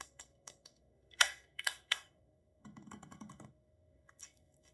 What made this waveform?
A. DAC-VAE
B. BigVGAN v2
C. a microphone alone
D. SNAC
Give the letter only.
D